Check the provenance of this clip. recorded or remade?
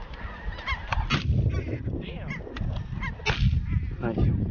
recorded